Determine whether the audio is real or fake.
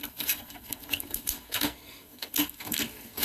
fake